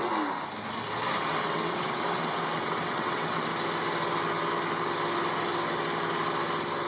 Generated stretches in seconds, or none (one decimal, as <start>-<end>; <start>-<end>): 1.3-3.5